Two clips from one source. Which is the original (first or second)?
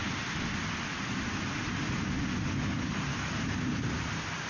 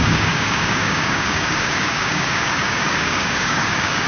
first